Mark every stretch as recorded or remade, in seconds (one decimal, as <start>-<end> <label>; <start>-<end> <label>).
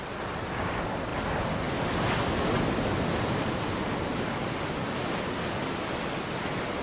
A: 0.0-6.8 recorded